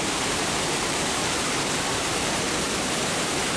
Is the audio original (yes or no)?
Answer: no